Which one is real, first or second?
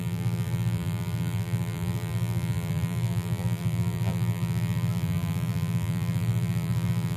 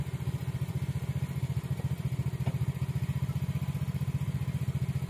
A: second